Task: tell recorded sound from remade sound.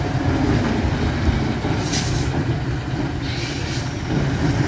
recorded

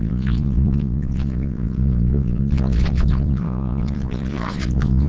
remade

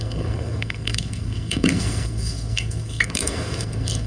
remade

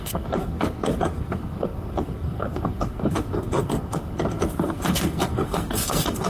remade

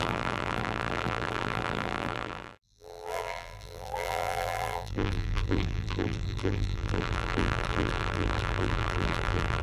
remade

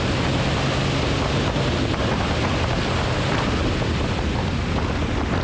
recorded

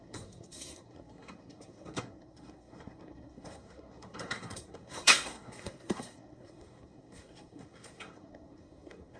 remade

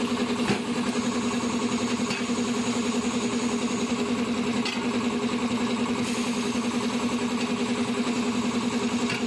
recorded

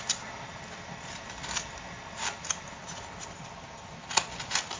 recorded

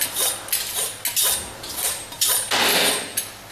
recorded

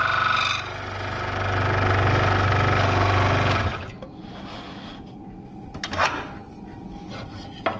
recorded